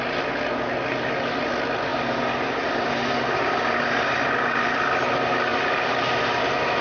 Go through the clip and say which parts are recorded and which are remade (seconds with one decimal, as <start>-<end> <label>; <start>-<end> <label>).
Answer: 0.0-6.8 recorded